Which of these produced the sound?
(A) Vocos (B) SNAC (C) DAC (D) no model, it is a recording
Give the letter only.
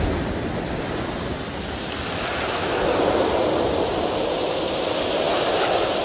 D